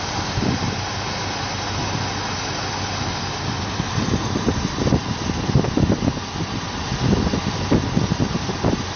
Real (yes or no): yes